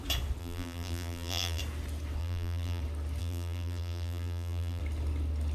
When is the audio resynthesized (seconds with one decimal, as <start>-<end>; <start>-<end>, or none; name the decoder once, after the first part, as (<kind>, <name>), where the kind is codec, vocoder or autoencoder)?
0.4-1.6 (vocoder, BigVGAN v2); 2.2-2.8; 3.2-4.8